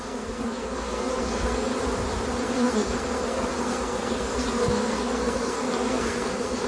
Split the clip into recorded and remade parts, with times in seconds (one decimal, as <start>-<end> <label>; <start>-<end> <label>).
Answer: 0.0-1.7 remade; 1.7-2.4 recorded; 2.4-6.7 remade